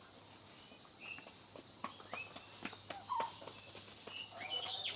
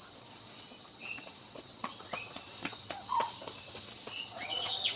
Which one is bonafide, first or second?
first